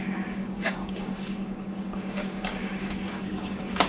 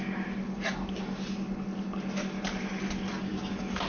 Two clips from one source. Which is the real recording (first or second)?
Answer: second